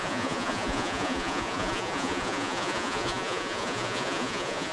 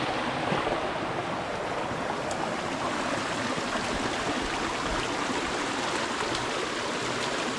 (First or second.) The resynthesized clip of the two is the first